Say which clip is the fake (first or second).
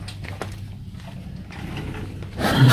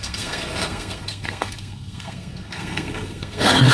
second